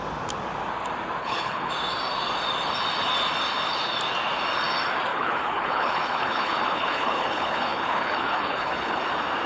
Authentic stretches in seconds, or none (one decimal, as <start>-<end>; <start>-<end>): 0.0-1.2; 1.7-5.1; 9.0-9.5